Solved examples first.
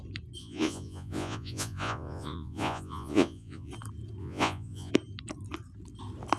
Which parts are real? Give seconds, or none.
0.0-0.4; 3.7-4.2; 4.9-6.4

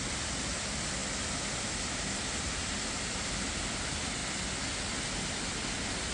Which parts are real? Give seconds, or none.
0.0-6.1

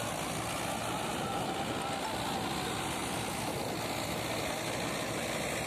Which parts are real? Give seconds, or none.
0.0-5.7

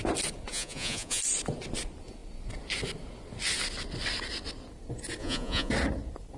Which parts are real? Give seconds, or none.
0.0-0.5; 1.2-5.2; 5.7-6.4

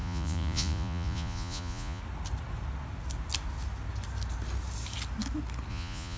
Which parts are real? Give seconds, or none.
2.0-5.7